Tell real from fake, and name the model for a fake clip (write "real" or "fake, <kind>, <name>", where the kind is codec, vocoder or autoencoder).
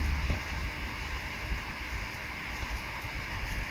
real